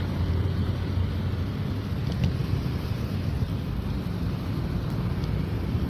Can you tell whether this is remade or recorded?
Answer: recorded